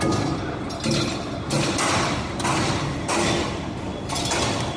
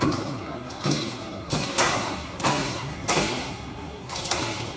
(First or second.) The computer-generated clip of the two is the second